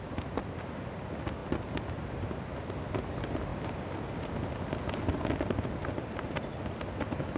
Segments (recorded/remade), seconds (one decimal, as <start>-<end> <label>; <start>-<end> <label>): 0.0-7.4 recorded